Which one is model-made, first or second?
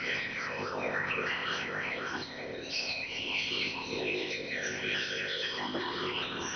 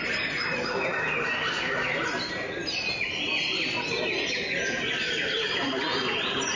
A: first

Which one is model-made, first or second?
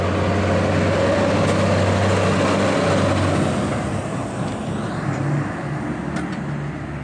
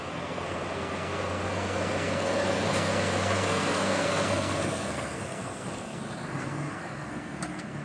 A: second